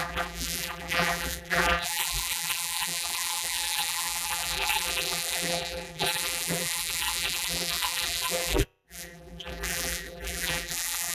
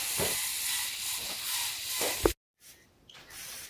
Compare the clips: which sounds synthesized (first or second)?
first